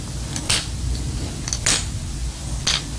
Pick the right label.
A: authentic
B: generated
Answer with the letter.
A